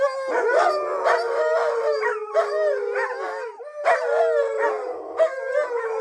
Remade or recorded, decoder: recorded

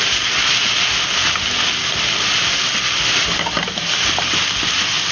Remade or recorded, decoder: recorded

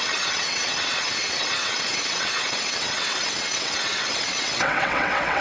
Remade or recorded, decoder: remade, vocoder, WaveNeXt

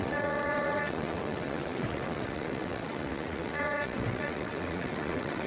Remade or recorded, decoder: remade, vocoder, WaveNeXt